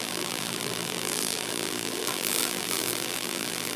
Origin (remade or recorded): remade